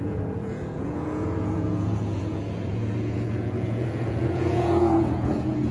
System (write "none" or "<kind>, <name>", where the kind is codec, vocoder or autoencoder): vocoder, Vocos